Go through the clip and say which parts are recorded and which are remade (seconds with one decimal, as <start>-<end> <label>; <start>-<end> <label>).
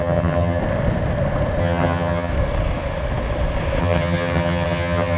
0.0-0.6 remade; 0.6-1.6 recorded; 1.6-2.3 remade; 2.3-3.8 recorded; 3.8-5.2 remade